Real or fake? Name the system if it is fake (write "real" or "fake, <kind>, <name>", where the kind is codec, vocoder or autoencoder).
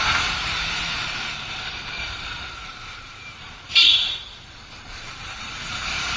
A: fake, vocoder, BigVGAN v2